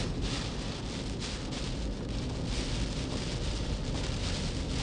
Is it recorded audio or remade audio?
recorded